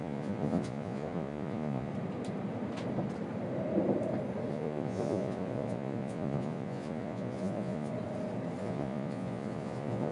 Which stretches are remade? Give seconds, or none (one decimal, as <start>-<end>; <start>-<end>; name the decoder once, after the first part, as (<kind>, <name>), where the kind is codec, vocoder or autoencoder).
0.0-1.9 (vocoder, Vocos); 4.5-7.9; 8.6-10.1